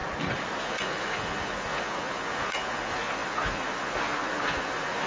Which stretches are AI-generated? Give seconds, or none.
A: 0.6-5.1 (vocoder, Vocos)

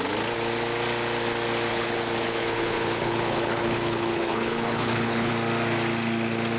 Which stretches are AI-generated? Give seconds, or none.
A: 1.7-5.3 (codec, HILCodec)

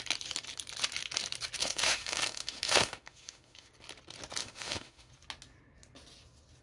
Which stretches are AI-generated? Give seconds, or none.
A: 1.6-3.7 (autoencoder, DAC-VAE); 4.4-5.1

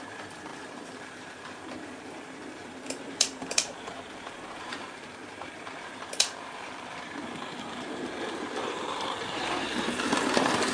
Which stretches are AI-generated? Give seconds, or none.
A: 0.0-10.7 (vocoder, BigVGAN v2)

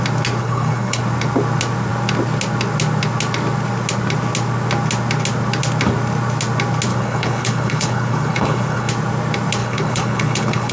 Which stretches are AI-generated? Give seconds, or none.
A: 0.4-1.0 (codec, HILCodec); 6.9-8.9; 9.6-10.7

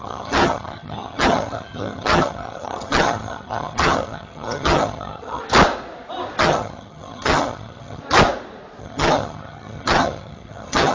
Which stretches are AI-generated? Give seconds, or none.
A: 0.0-5.4 (vocoder, HiFi-GAN); 6.4-8.0; 8.8-10.9